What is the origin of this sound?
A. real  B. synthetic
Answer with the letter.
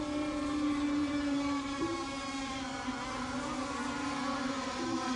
B